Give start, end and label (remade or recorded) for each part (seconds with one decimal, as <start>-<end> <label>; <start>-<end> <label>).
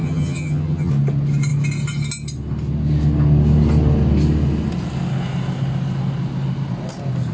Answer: 0.0-0.9 remade; 0.9-7.3 recorded